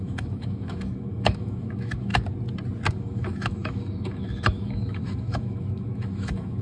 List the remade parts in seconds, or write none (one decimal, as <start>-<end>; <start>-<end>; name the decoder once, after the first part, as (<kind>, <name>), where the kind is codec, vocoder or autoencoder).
0.0-2.1 (autoencoder, DAC-VAE); 2.9-6.6